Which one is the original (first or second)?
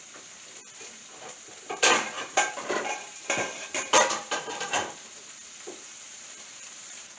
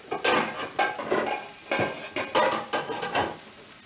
second